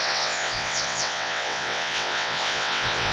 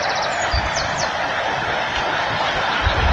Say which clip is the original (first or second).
second